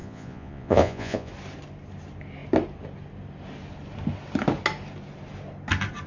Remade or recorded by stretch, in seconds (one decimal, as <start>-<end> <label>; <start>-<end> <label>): 0.0-1.3 remade; 1.3-6.1 recorded